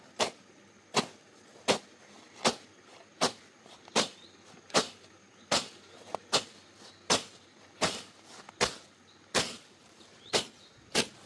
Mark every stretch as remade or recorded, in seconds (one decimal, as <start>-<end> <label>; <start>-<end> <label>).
0.0-9.8 recorded; 9.8-10.5 remade; 10.5-11.3 recorded